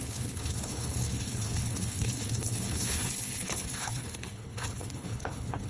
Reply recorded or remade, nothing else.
remade